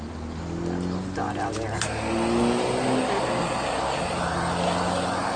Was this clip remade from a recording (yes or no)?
no